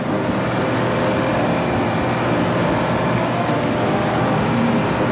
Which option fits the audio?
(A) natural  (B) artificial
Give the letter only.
A